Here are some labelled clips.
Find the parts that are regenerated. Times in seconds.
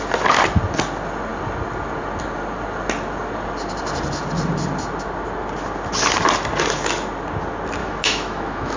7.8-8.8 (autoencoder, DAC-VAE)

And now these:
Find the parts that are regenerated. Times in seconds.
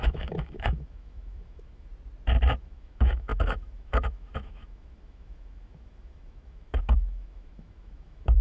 0.0-1.9 (autoencoder, DAC-VAE); 2.6-8.4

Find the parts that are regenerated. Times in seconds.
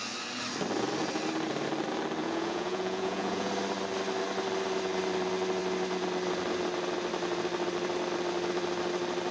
2.2-3.5 (vocoder, Vocos)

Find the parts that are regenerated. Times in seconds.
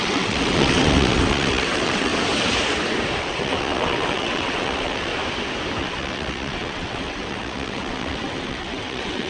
0.0-2.1 (vocoder, WaveNeXt); 3.2-5.1; 5.8-9.3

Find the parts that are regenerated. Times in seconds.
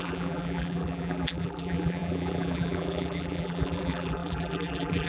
0.0-5.1 (vocoder, BigVGAN v2)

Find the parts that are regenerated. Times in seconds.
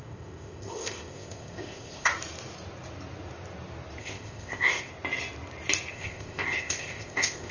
0.0-2.1 (codec, ZipCodec); 4.0-4.9; 5.9-7.5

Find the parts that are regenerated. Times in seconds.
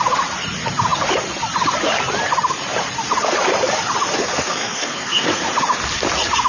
4.2-5.4 (codec, SNAC)